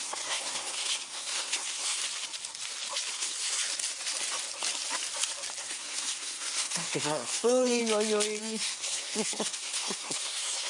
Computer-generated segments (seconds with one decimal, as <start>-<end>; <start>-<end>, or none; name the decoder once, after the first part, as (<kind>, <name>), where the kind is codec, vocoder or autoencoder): 0.0-2.0 (codec, SNAC); 3.1-3.6; 5.6-7.8; 8.4-10.7